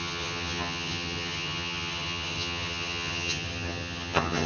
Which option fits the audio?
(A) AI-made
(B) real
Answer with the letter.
A